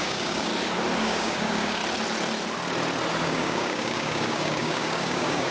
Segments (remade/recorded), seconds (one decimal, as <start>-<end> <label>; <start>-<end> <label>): 0.0-0.5 remade; 0.5-1.0 recorded; 1.0-1.8 remade; 1.8-3.2 recorded; 3.2-5.5 remade